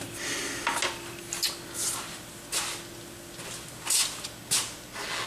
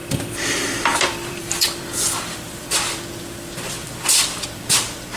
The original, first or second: first